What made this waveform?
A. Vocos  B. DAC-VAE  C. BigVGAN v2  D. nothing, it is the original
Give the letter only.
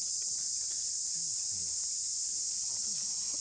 D